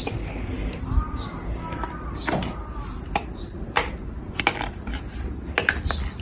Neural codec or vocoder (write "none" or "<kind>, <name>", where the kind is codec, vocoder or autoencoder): none